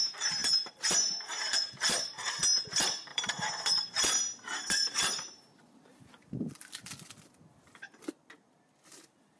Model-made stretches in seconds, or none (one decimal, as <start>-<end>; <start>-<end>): 0.4-2.0; 3.1-8.1